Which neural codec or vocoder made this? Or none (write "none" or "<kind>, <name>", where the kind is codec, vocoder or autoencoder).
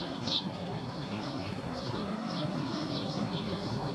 codec, SNAC